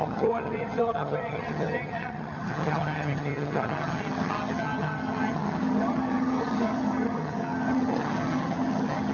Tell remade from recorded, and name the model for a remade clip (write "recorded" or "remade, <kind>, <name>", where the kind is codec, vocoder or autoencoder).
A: remade, vocoder, HiFi-GAN